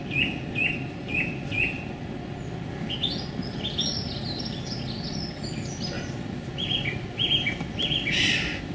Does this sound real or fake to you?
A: real